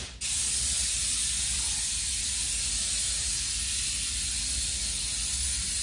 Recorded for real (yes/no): yes